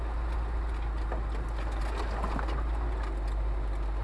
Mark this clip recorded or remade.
recorded